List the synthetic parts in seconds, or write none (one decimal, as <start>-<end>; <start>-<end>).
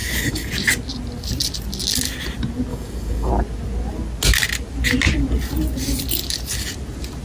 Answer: 0.0-0.5; 2.7-3.3